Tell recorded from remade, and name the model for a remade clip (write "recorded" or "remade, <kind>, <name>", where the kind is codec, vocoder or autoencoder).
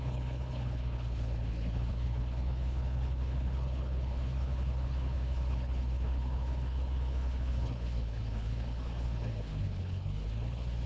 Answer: remade, codec, HILCodec